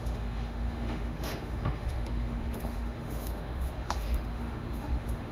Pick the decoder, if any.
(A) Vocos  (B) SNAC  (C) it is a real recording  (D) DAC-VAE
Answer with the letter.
D